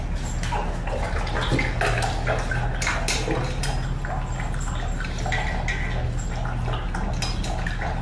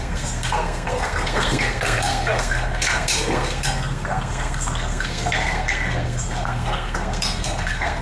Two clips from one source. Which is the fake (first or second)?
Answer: second